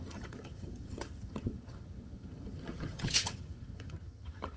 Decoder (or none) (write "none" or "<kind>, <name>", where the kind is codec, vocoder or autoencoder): vocoder, HiFi-GAN